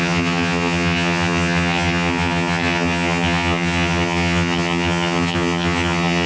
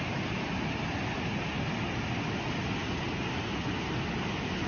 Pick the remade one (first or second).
first